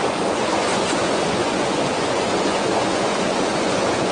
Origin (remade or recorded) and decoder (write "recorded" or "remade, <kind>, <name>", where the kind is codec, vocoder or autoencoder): remade, vocoder, Vocos